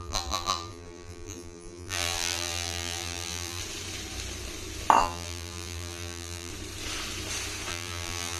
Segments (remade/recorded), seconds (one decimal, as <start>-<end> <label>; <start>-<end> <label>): 0.0-3.6 remade; 3.6-5.0 recorded; 5.0-6.5 remade; 6.5-7.7 recorded; 7.7-8.4 remade